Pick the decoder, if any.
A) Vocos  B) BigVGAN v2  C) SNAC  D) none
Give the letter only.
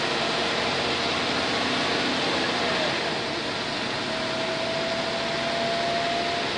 D